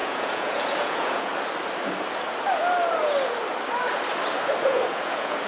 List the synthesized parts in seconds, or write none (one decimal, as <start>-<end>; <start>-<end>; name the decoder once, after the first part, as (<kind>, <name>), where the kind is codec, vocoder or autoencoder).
0.0-1.3 (vocoder, Vocos); 4.6-5.5